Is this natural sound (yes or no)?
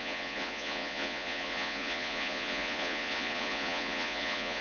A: no